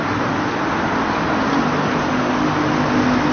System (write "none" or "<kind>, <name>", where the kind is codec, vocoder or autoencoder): none